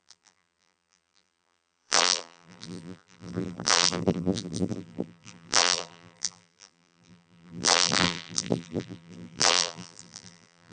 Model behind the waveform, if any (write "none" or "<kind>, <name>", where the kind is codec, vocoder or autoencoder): vocoder, BigVGAN v2